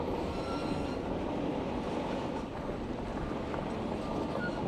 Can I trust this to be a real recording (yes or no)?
no